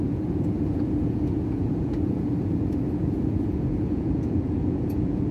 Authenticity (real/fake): fake